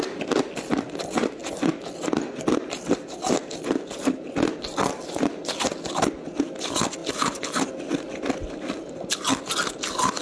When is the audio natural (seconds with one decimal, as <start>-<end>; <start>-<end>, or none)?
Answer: 0.0-10.2